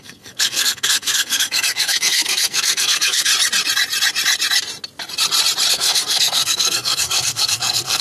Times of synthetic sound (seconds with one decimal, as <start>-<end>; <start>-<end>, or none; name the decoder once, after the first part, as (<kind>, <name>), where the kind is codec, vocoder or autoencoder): 0.0-3.3 (codec, SNAC); 5.7-8.0